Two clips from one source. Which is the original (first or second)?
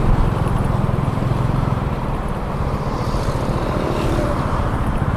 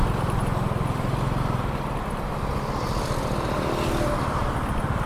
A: second